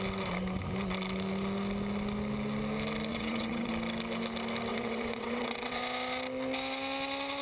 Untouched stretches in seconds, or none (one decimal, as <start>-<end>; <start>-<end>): 0.0-3.1; 3.7-4.7; 5.8-7.4